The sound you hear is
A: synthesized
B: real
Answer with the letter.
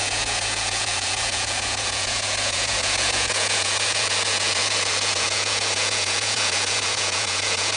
A